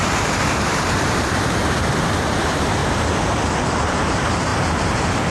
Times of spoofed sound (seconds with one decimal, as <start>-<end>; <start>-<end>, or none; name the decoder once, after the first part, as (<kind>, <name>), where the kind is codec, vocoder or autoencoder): 0.0-1.6 (vocoder, BigVGAN v2); 2.4-2.8; 3.9-4.5